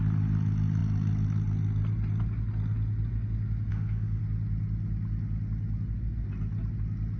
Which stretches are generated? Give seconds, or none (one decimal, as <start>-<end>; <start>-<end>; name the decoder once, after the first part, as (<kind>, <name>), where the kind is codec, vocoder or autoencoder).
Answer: 3.7-4.2 (autoencoder, DAC-VAE)